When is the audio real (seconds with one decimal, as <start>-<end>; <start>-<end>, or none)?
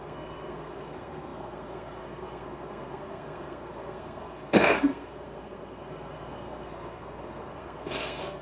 none